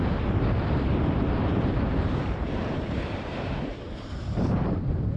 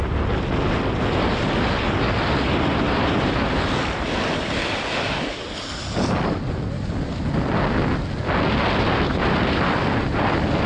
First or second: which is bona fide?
second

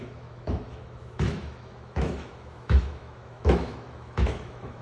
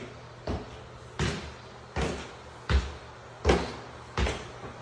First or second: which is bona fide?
second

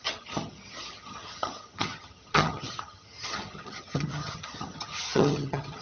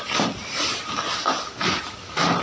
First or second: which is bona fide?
second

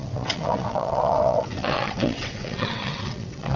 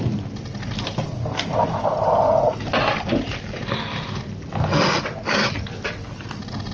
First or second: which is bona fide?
second